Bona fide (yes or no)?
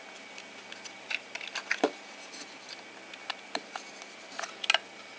yes